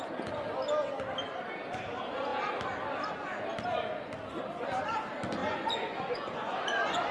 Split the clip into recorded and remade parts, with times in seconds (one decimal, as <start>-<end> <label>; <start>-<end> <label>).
0.0-5.4 recorded; 5.4-7.1 remade